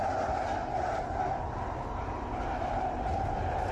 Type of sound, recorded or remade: recorded